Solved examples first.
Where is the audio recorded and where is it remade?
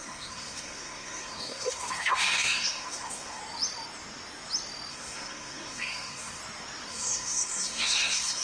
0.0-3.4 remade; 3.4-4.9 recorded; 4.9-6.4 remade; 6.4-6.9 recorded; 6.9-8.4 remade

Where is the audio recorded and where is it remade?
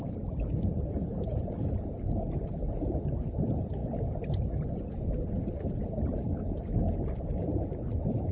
0.0-8.3 recorded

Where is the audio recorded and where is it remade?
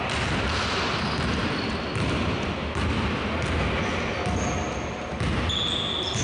0.0-6.2 recorded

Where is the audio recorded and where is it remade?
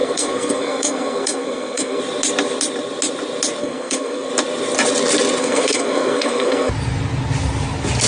0.0-2.0 remade; 2.0-3.6 recorded; 3.6-4.3 remade; 4.3-5.4 recorded; 5.4-6.7 remade; 6.7-8.1 recorded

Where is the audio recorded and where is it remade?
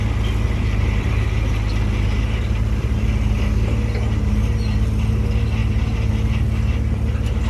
0.0-7.5 recorded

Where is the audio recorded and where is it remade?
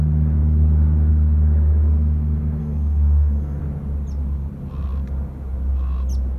0.0-2.6 recorded; 2.6-3.6 remade; 3.6-6.4 recorded